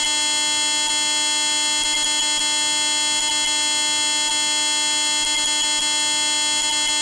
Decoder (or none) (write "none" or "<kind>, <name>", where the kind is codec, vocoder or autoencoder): none